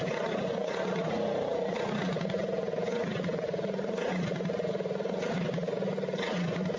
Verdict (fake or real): real